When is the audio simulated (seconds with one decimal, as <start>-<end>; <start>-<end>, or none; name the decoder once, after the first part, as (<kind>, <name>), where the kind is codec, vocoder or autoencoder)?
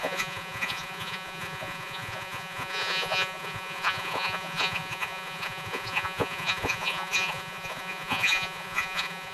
0.0-9.3 (vocoder, Vocos)